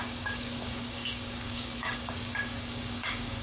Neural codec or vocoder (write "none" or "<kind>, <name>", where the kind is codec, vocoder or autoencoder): codec, DAC